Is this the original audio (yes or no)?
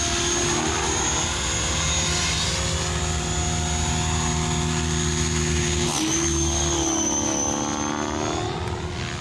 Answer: yes